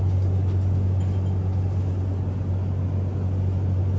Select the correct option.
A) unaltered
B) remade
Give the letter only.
A